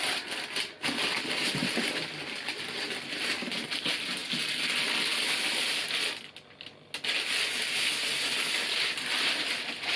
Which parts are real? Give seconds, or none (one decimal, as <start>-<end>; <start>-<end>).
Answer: 0.0-10.0

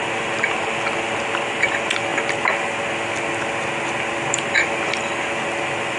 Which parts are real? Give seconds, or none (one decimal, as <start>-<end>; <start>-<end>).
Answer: 0.0-6.0

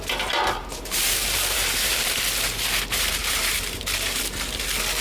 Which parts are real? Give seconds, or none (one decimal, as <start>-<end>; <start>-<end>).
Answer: 0.0-0.6; 2.2-3.2; 4.2-5.0

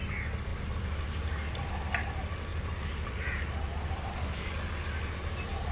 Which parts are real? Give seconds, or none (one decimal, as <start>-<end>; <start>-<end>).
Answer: 0.0-0.5; 1.7-2.5; 4.5-5.7

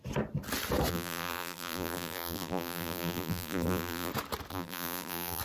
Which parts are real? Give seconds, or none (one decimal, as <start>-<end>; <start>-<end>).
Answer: 0.0-0.9; 4.1-4.5